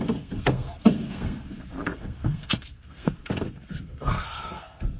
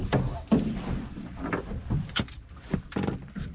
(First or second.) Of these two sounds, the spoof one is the first